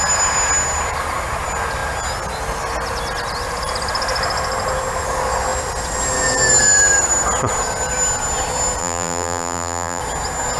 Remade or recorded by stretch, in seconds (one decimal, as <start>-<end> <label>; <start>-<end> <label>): 0.0-8.8 recorded; 8.8-10.0 remade; 10.0-10.6 recorded